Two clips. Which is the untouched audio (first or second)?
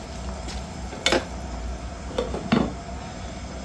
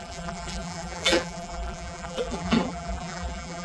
first